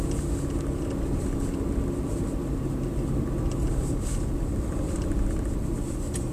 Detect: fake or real real